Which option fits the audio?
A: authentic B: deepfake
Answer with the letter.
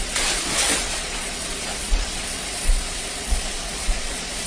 B